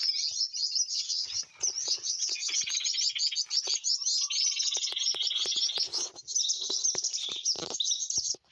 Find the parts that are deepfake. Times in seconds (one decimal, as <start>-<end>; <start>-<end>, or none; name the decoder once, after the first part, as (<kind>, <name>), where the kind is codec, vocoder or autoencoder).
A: 0.9-1.4 (vocoder, WaveNeXt); 1.8-2.6